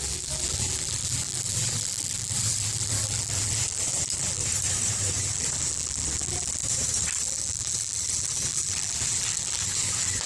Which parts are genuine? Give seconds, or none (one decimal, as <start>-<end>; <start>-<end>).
4.4-5.2; 6.6-7.2